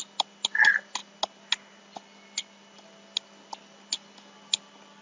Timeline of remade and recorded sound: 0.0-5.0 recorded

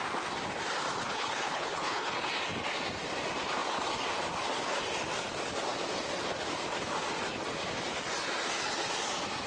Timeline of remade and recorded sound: 0.0-1.0 recorded; 1.0-2.3 remade; 2.3-9.5 recorded

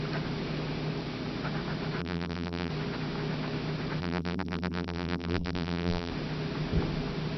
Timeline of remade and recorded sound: 0.0-2.0 recorded; 2.0-2.7 remade; 2.7-4.0 recorded; 4.0-6.1 remade; 6.1-7.4 recorded

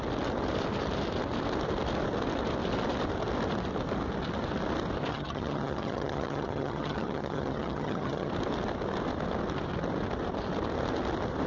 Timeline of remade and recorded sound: 0.0-5.1 recorded; 5.1-8.3 remade; 8.3-11.5 recorded